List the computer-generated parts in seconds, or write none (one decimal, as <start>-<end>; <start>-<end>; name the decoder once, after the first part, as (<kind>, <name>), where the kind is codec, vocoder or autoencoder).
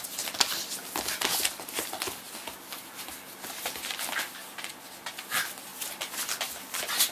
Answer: none